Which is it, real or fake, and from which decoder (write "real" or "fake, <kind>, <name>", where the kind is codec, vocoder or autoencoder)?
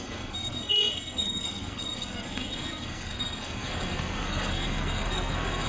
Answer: fake, codec, SNAC